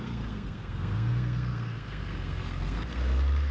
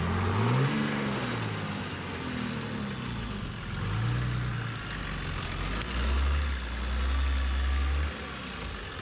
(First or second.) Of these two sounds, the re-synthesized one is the first